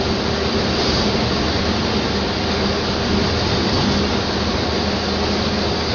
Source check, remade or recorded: recorded